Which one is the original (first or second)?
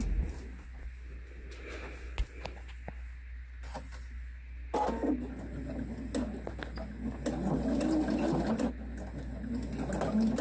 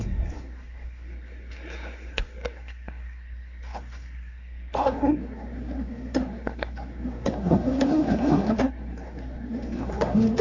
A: first